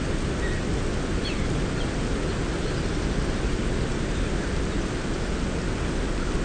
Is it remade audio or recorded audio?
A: recorded